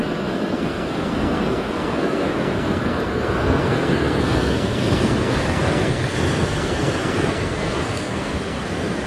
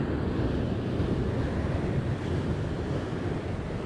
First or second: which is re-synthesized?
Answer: first